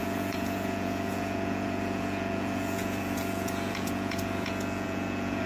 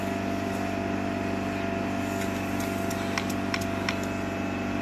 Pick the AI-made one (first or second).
first